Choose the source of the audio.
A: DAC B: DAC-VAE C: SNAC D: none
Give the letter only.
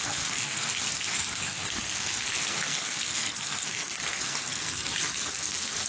C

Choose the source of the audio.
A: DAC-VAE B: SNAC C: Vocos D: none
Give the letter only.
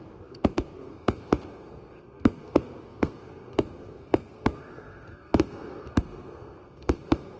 B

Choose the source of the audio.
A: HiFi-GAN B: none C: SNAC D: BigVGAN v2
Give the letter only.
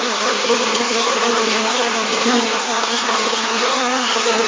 C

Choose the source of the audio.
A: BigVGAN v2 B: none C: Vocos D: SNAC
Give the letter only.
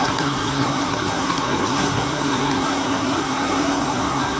D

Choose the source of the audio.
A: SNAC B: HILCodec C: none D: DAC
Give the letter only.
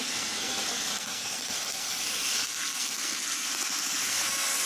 A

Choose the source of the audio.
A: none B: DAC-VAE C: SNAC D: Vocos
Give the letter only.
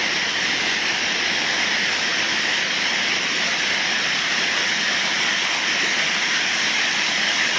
A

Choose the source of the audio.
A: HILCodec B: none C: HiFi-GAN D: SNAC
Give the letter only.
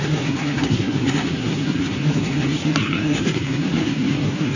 D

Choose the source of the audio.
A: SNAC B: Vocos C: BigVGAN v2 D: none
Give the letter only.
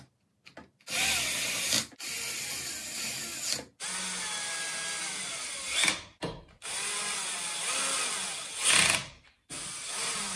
D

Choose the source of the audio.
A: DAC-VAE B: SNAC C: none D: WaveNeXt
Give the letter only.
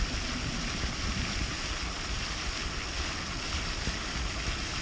C